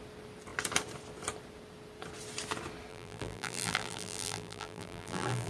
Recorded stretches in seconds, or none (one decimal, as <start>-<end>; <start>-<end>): 0.0-2.9